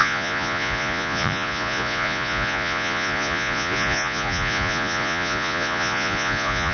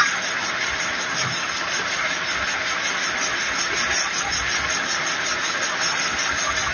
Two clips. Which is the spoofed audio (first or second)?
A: first